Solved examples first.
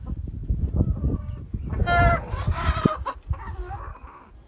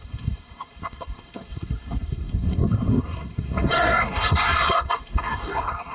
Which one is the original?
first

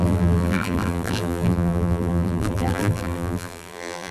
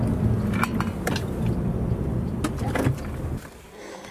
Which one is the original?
second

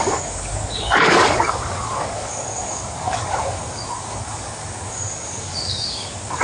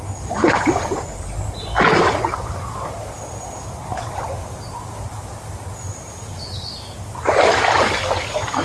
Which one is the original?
second